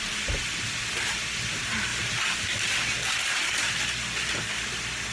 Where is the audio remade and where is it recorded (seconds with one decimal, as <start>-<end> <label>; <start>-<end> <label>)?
0.0-1.9 recorded; 1.9-4.3 remade; 4.3-5.1 recorded